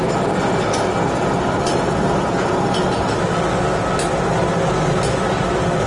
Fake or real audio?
real